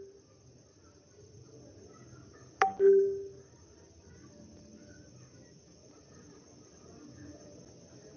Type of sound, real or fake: real